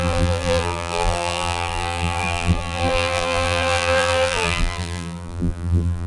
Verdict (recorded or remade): remade